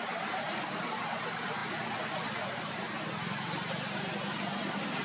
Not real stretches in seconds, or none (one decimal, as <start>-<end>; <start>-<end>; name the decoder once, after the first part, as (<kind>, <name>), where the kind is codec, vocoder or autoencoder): 0.0-1.6 (vocoder, BigVGAN v2); 4.6-5.0